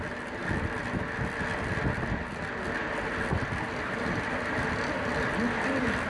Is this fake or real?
real